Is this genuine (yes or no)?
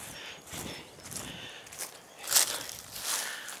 yes